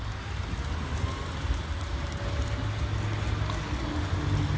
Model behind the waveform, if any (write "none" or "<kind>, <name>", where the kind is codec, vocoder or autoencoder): none